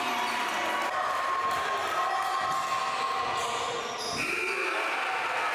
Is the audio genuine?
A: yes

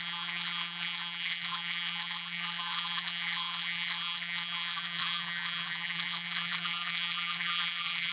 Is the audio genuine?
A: no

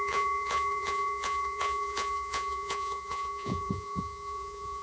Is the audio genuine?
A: no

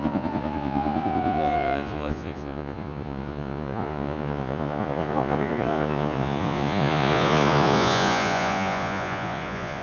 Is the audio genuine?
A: no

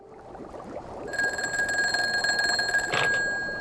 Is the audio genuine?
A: yes